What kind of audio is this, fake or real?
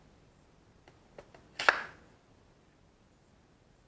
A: real